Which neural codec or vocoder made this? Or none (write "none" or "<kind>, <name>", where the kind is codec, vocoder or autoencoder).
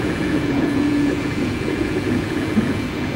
vocoder, Vocos